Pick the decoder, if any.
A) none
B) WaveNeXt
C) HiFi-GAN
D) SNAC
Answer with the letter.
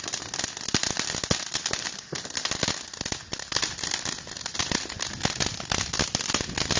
A